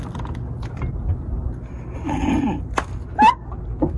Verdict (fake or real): real